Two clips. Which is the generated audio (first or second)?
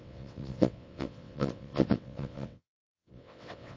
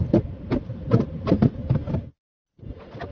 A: first